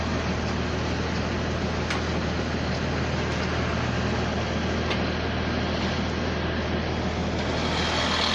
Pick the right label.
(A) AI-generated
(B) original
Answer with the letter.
B